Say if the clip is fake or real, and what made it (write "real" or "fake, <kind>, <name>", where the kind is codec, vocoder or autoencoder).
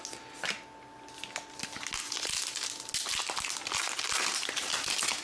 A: real